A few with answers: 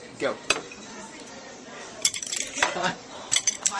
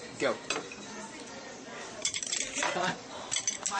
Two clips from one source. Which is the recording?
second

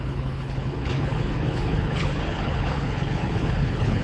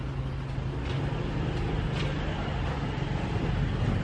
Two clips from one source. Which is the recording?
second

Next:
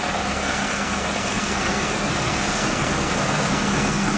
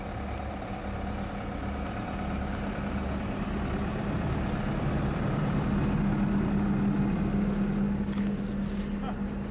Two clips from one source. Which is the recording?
second